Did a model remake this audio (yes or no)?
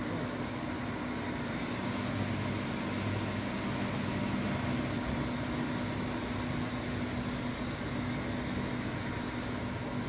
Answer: no